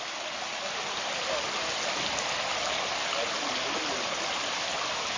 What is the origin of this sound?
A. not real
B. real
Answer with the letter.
B